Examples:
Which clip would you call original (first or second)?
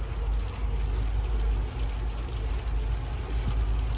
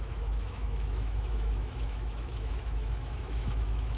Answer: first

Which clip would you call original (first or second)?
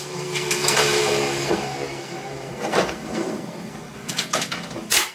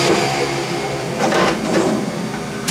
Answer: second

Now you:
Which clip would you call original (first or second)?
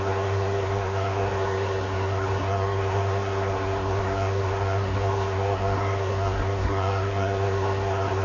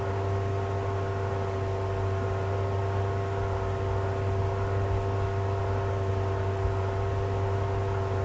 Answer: second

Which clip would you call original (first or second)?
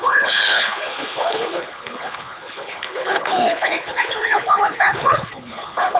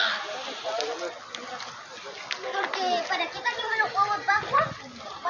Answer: second